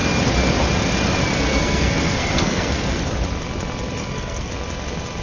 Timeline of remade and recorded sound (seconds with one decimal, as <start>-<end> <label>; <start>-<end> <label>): 0.0-1.5 recorded; 1.5-3.0 remade; 3.0-4.0 recorded; 4.0-4.5 remade; 4.5-5.2 recorded